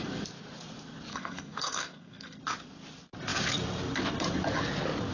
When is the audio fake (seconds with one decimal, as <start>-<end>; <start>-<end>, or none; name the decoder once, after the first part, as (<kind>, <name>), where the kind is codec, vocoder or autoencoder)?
1.1-2.4 (codec, SNAC)

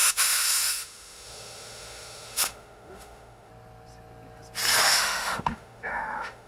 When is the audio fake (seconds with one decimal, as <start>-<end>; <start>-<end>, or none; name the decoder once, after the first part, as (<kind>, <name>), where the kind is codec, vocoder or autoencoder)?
0.0-3.5 (autoencoder, DAC-VAE); 4.8-6.5

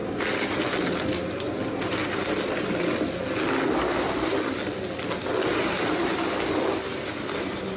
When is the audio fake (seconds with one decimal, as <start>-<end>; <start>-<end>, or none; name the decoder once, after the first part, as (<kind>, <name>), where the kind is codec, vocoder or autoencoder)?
6.9-7.8 (vocoder, BigVGAN v2)

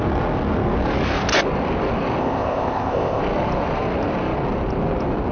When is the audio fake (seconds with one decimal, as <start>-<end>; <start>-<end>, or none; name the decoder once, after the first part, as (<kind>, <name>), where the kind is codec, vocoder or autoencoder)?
2.2-3.2 (codec, ZipCodec)